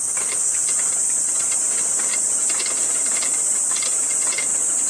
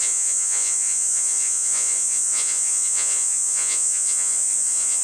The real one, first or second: first